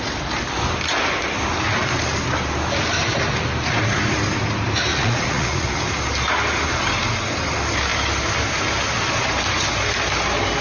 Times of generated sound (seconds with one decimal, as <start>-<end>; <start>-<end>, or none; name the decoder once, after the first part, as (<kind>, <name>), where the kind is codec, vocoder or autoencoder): 4.9-5.8 (vocoder, Vocos)